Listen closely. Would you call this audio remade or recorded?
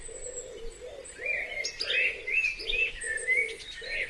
recorded